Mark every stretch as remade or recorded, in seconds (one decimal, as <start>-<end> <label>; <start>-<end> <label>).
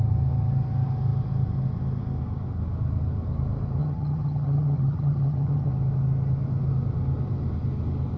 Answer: 0.0-3.8 recorded; 3.8-5.7 remade; 5.7-8.2 recorded